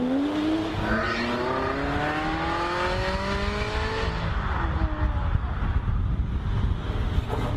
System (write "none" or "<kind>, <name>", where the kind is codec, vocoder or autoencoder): none